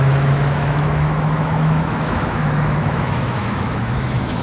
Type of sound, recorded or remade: remade